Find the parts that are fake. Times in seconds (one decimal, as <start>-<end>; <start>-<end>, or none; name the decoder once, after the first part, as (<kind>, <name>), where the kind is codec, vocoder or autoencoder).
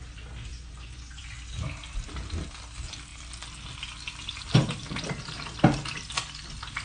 0.5-1.2 (vocoder, Vocos)